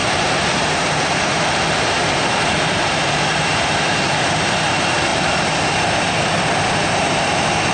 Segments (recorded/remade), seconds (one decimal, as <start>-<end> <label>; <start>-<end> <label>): 0.0-7.7 remade